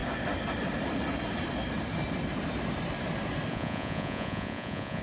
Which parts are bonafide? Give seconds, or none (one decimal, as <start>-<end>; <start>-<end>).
0.0-3.5